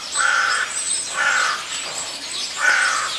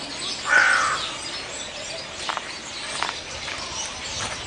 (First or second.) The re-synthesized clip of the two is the first